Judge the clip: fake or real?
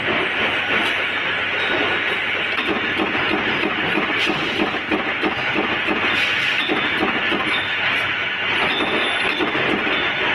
real